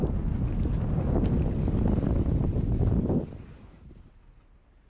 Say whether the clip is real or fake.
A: real